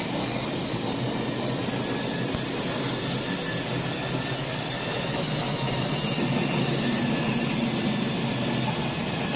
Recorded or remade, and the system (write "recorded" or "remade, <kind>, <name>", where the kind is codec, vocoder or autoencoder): recorded